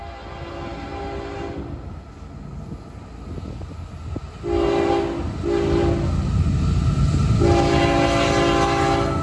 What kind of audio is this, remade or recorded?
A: recorded